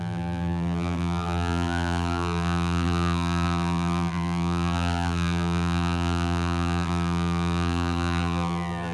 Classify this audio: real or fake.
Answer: fake